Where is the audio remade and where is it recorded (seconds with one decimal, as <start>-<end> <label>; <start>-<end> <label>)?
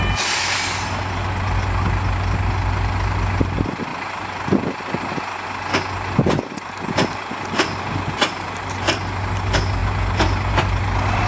0.0-11.3 recorded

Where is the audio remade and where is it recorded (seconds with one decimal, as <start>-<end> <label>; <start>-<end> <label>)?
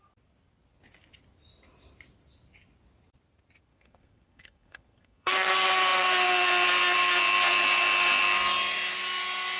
0.0-3.7 recorded; 3.7-5.3 remade; 5.3-9.6 recorded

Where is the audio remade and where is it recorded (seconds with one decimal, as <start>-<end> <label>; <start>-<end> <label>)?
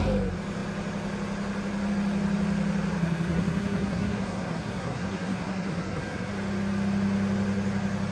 0.0-3.0 recorded; 3.0-6.3 remade; 6.3-8.1 recorded